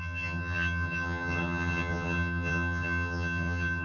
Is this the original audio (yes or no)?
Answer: no